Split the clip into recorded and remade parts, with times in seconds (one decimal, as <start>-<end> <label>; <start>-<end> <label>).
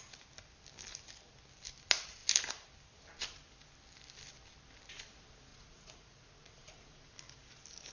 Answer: 0.0-5.5 recorded; 5.5-7.1 remade; 7.1-7.9 recorded